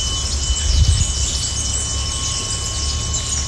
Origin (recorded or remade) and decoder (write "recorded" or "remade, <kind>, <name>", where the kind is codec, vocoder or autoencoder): recorded